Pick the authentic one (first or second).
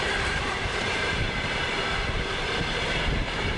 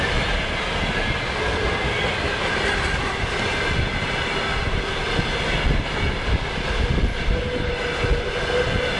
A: second